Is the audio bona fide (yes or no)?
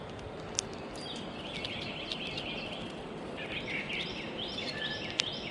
yes